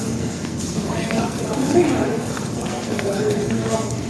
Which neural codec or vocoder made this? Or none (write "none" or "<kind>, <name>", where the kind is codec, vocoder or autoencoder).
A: codec, SNAC